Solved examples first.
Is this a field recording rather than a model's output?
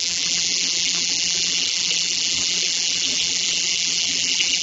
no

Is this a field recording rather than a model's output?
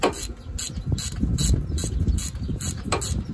yes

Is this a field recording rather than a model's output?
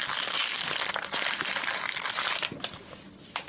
yes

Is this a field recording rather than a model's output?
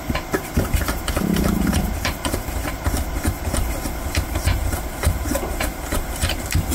no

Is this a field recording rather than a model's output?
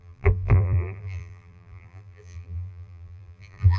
no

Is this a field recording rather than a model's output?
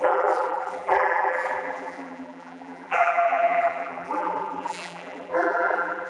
no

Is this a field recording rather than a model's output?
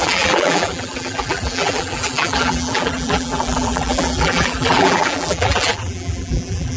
no